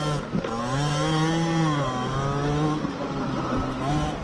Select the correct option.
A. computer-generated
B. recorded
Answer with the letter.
B